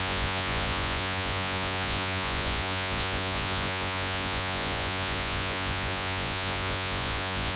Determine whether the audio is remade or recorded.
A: remade